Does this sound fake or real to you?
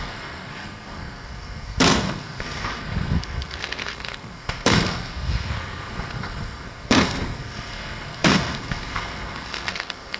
fake